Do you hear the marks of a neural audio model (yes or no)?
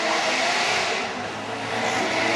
no